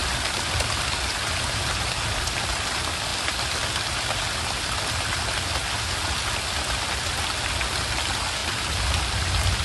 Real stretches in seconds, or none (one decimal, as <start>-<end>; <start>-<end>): 0.0-9.6